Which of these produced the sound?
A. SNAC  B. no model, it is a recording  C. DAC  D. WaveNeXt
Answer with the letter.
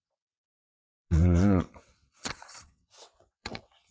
D